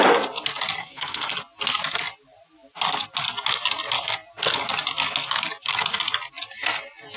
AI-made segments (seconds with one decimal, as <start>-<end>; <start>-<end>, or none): 0.8-1.3